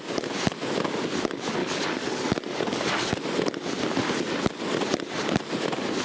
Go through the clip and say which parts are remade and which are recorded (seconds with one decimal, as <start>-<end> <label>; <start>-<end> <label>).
0.0-1.6 recorded; 1.6-3.2 remade; 3.2-6.0 recorded